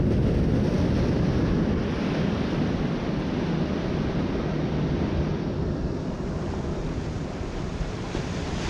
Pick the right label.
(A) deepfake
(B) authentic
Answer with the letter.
B